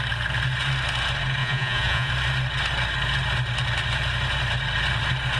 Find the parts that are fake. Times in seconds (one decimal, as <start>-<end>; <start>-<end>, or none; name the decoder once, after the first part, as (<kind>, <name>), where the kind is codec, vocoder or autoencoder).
1.4-2.1 (vocoder, Vocos)